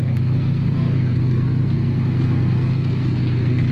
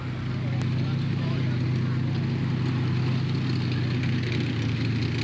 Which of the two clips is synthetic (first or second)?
first